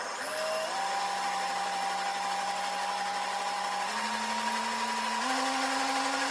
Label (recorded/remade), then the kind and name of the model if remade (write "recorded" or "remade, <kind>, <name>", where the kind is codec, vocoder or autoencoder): recorded